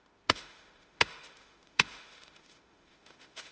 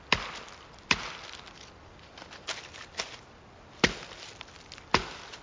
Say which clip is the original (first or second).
second